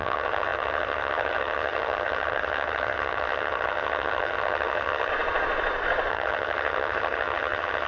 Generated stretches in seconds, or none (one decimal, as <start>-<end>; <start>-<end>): 0.0-5.1; 6.1-7.9